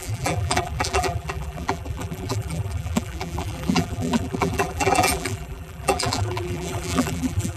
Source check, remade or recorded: remade